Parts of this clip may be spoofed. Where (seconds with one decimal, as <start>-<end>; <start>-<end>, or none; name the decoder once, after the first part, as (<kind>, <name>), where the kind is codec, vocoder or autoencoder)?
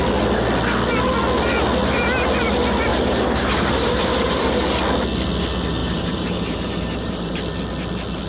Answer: 2.9-4.4 (vocoder, BigVGAN v2); 5.8-7.4